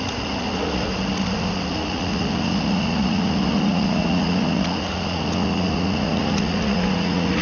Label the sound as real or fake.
fake